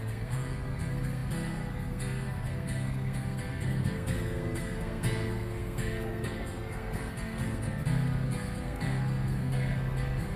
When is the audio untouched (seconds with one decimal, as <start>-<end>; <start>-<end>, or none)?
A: none